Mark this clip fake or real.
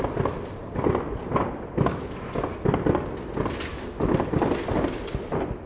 real